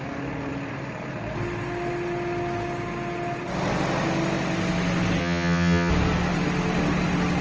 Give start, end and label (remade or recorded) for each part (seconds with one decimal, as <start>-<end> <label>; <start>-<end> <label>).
0.0-5.2 recorded; 5.2-5.9 remade; 5.9-7.4 recorded